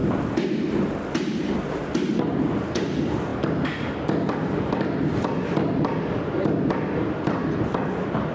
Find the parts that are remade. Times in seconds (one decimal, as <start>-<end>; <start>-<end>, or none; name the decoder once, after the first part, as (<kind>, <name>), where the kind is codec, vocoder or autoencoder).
none